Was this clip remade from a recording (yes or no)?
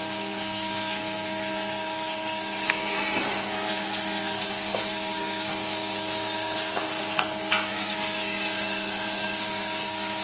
yes